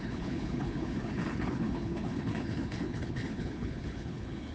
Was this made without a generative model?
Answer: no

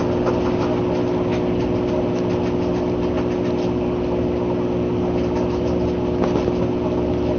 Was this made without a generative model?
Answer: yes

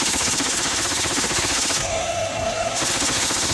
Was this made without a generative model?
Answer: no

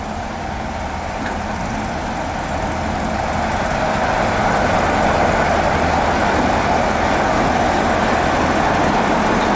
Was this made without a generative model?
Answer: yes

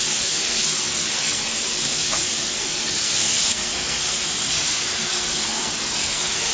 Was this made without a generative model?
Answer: no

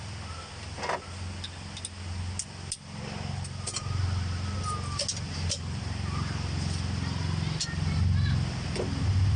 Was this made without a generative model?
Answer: yes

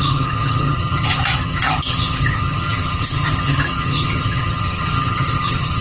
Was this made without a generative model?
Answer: no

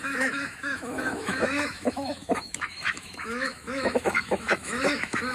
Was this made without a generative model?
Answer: no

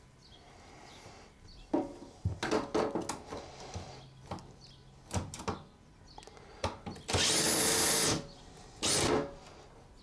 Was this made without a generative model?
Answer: yes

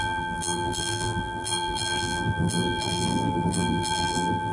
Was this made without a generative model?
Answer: no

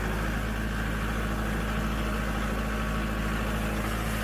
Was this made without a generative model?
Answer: yes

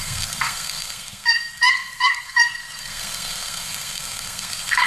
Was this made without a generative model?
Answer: no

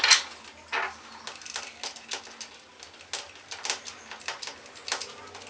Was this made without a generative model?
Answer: yes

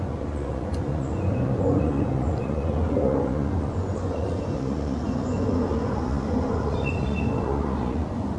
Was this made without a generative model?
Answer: no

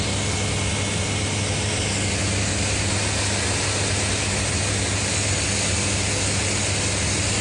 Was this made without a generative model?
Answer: yes